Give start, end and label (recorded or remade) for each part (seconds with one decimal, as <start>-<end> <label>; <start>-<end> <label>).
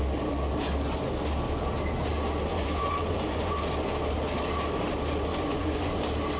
0.0-2.5 recorded; 2.5-3.5 remade; 3.5-5.3 recorded; 5.3-6.0 remade; 6.0-6.4 recorded